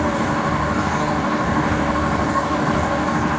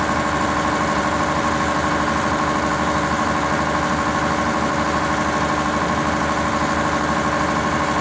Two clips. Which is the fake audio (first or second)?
first